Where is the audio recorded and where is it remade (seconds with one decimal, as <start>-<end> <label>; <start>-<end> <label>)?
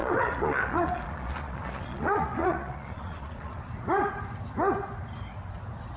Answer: 0.0-3.6 remade; 3.6-6.0 recorded